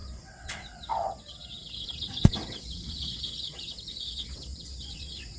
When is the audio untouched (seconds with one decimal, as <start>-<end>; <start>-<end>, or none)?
none